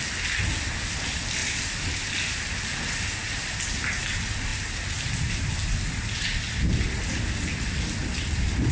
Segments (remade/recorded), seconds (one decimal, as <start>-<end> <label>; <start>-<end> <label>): 0.0-8.7 recorded